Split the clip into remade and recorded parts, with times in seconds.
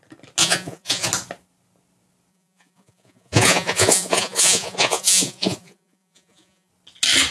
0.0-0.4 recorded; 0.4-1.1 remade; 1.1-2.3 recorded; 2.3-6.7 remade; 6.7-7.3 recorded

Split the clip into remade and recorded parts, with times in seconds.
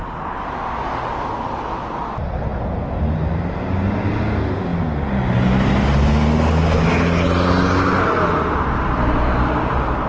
0.0-10.1 recorded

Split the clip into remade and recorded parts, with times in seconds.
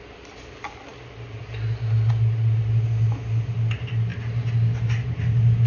0.0-5.7 recorded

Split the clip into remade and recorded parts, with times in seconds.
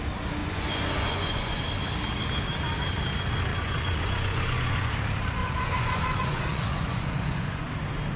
0.0-0.4 recorded; 0.4-1.6 remade; 1.6-3.5 recorded; 3.5-4.9 remade; 4.9-5.4 recorded; 5.4-7.7 remade; 7.7-8.2 recorded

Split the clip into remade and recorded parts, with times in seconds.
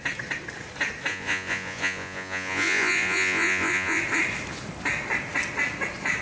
0.0-1.1 recorded; 1.1-4.0 remade; 4.0-6.2 recorded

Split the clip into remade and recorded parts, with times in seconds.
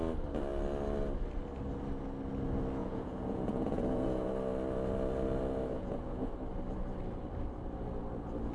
0.0-2.8 recorded; 2.8-4.3 remade; 4.3-5.7 recorded; 5.7-6.3 remade; 6.3-8.5 recorded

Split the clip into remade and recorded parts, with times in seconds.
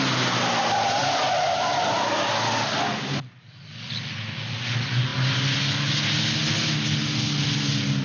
0.0-8.0 recorded